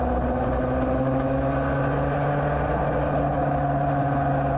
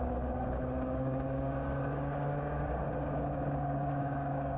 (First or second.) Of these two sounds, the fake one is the second